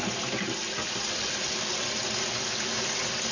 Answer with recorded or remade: recorded